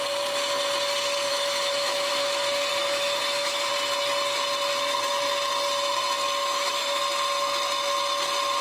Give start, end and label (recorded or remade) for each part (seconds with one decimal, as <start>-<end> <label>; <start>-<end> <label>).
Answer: 0.0-1.3 recorded; 1.3-2.1 remade; 2.1-2.7 recorded; 2.7-3.7 remade; 3.7-6.4 recorded; 6.4-7.0 remade; 7.0-8.6 recorded